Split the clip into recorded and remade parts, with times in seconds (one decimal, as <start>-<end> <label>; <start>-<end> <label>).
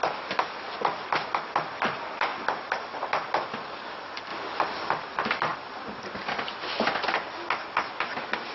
0.0-8.5 recorded